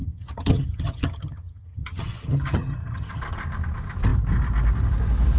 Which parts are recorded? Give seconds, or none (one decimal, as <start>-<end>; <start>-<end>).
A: 3.2-5.4